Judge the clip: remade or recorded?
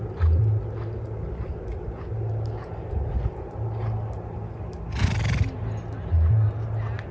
recorded